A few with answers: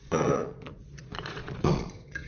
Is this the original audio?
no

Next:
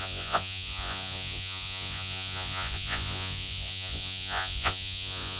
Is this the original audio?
no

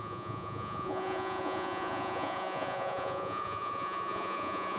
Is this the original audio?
no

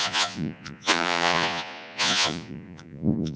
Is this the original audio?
no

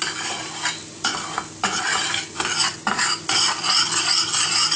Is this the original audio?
yes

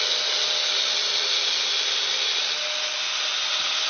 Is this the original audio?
yes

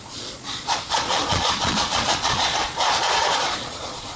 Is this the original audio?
no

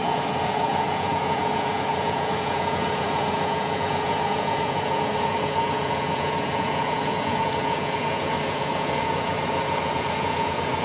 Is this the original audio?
no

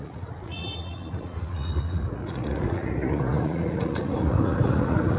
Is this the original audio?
no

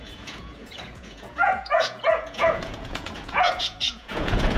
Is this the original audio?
no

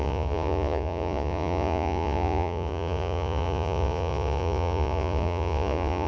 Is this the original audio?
no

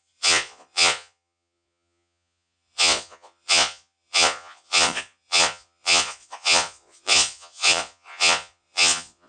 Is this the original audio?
no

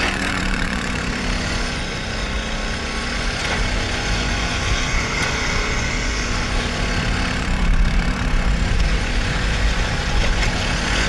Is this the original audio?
no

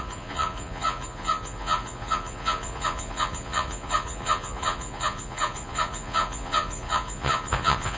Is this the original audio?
no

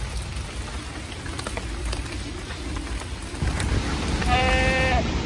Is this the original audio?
yes